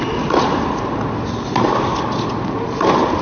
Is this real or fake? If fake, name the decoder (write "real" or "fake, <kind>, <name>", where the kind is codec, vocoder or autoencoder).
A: real